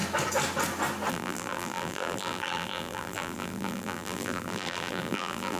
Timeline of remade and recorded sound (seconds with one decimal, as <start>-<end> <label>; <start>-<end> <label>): 0.0-1.1 recorded; 1.1-5.6 remade